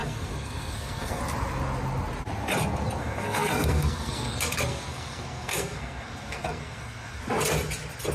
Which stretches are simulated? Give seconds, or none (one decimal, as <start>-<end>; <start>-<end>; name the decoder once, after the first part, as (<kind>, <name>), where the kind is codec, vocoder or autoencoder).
0.0-1.2 (codec, SNAC); 3.0-7.2